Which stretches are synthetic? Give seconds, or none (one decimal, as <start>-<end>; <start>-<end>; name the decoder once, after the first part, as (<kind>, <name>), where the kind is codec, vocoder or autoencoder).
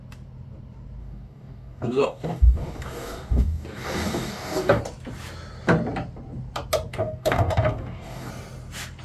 1.0-4.8 (codec, DAC); 6.9-8.3